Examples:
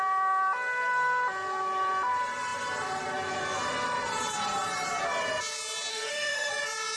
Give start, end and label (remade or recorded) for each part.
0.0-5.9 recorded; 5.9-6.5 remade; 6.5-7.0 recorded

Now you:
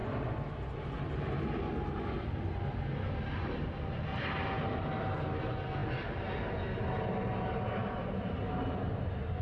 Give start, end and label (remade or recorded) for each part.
0.0-4.1 recorded; 4.1-4.9 remade; 4.9-9.4 recorded

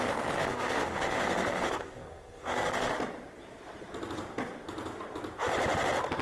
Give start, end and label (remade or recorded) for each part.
0.0-2.9 remade; 2.9-6.2 recorded

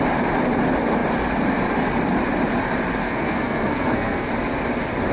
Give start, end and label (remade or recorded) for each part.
0.0-3.0 recorded; 3.0-4.3 remade; 4.3-5.1 recorded

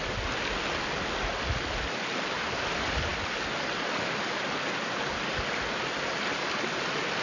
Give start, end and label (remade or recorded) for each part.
0.0-7.2 recorded

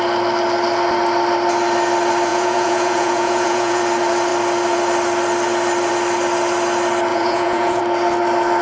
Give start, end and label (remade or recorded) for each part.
0.0-2.3 recorded; 2.3-3.8 remade; 3.8-7.1 recorded; 7.1-7.8 remade; 7.8-8.6 recorded

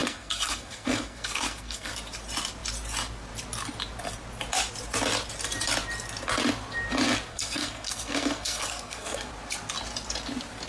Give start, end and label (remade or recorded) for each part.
0.0-1.9 remade; 1.9-7.3 recorded; 7.3-9.3 remade; 9.3-10.7 recorded

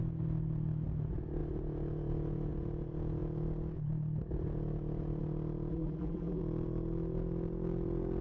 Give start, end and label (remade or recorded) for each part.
0.0-5.7 recorded; 5.7-6.4 remade; 6.4-8.2 recorded